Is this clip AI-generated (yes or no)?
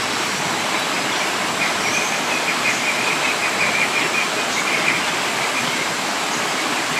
no